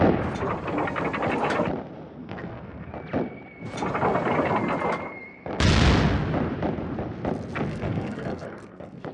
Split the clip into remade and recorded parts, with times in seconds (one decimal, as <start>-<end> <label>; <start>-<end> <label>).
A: 0.0-2.2 recorded; 2.2-2.9 remade; 2.9-7.7 recorded; 7.7-9.1 remade